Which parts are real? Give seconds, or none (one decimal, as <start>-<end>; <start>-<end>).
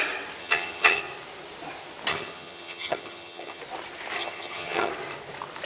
0.0-0.4; 1.0-2.1; 3.6-4.2; 4.9-5.7